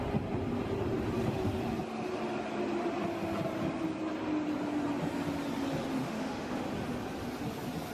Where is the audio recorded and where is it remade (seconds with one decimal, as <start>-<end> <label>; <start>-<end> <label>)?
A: 0.0-6.0 recorded; 6.0-6.7 remade; 6.7-7.9 recorded